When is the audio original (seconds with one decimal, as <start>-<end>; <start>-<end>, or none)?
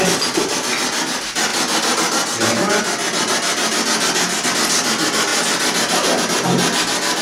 0.0-7.2